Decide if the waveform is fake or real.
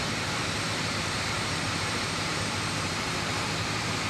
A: fake